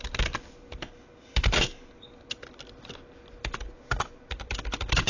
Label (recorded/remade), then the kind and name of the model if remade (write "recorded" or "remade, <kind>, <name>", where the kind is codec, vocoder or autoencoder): recorded